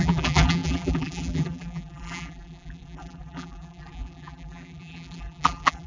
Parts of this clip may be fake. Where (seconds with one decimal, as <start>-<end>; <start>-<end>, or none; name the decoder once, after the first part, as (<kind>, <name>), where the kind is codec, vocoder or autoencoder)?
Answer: 0.0-5.9 (vocoder, BigVGAN v2)